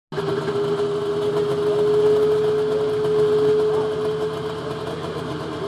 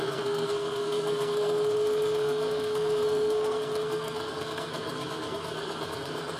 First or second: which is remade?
second